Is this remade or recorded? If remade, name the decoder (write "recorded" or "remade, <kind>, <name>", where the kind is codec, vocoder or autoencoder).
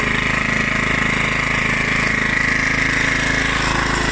recorded